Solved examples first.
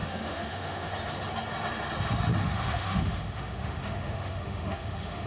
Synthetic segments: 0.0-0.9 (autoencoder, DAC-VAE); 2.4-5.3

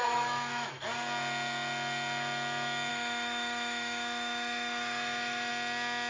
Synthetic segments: 0.0-0.8 (autoencoder, DAC-VAE); 2.9-5.5

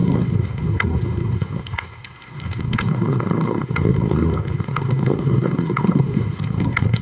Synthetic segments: 0.0-7.0 (codec, SNAC)

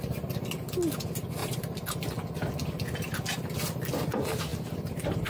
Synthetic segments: 1.4-2.1 (vocoder, BigVGAN v2); 4.5-5.3

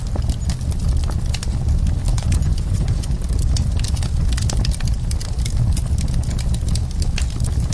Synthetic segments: 2.1-3.1 (vocoder, Vocos)

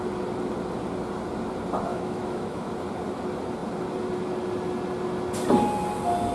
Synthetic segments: 1.9-2.7 (autoencoder, DAC-VAE)

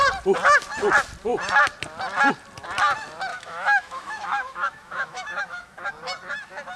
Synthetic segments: 3.3-5.9 (autoencoder, DAC-VAE)